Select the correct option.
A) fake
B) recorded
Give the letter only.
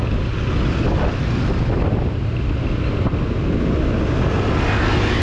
B